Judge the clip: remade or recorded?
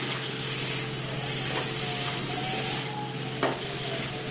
recorded